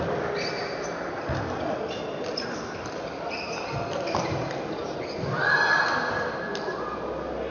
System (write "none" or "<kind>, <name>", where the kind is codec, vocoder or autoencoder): none